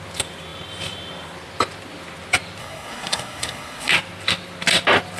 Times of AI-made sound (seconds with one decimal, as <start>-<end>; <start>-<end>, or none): 2.6-3.9